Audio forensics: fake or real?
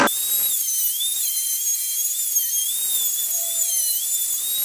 real